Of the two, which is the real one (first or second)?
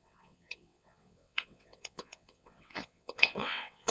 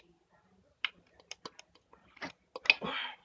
second